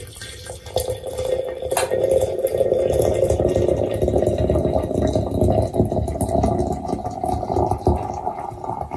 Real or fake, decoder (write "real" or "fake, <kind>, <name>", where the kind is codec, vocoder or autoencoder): real